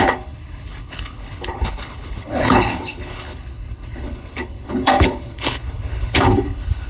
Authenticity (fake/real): fake